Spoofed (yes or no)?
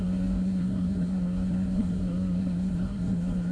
yes